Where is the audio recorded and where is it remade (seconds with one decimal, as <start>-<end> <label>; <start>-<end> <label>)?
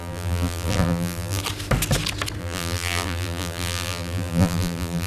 0.0-1.4 remade; 1.4-2.4 recorded; 2.4-5.1 remade